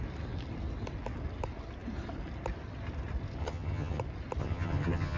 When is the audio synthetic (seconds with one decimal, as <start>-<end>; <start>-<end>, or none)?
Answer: 3.4-4.0; 4.4-5.2